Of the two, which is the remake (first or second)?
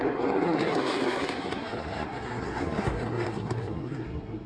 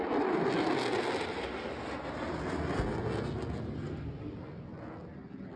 first